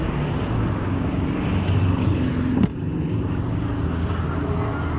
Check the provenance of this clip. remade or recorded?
recorded